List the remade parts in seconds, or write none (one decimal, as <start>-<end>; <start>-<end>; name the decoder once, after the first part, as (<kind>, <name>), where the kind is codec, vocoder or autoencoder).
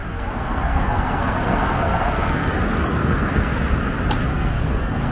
0.0-2.5 (codec, SNAC); 2.9-3.5; 4.3-5.1